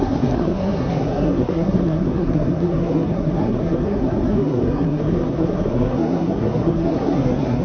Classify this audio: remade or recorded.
remade